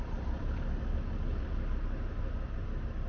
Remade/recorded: recorded